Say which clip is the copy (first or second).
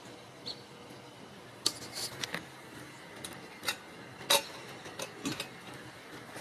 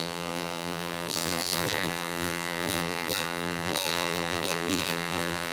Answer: second